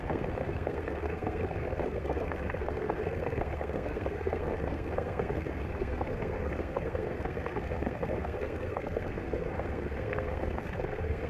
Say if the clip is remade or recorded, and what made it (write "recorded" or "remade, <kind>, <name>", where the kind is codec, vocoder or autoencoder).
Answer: remade, codec, SNAC